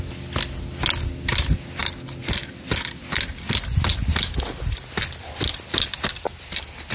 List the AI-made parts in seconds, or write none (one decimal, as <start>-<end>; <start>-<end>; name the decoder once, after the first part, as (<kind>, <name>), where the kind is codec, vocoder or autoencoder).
none